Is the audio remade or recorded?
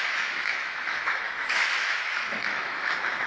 remade